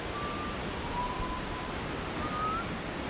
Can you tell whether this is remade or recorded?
recorded